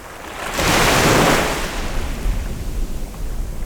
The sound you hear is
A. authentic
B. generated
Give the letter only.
A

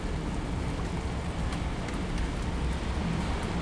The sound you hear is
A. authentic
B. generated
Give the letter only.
A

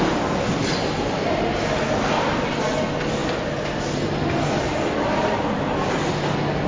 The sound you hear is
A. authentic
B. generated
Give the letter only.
A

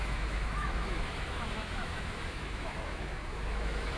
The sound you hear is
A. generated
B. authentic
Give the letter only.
A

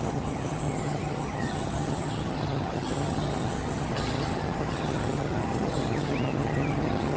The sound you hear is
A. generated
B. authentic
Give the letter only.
A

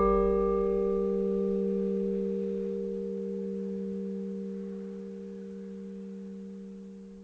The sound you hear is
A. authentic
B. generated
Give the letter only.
A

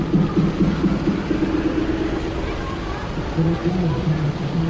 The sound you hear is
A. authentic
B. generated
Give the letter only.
A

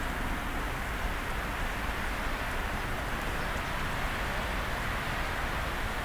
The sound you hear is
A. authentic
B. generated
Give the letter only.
A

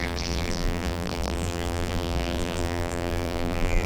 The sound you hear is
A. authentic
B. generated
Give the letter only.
B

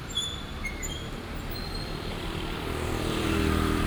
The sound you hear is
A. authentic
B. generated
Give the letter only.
B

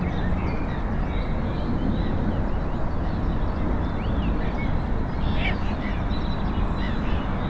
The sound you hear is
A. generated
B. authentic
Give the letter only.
B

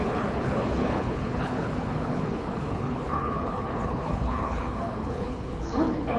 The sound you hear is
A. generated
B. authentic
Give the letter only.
A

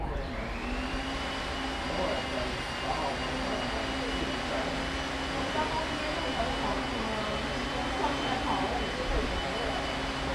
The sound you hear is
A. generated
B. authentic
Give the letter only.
B